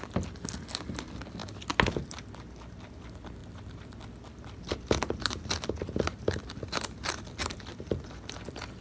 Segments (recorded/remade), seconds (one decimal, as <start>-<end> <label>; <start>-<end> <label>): 0.0-3.4 recorded; 3.4-6.4 remade; 6.4-8.8 recorded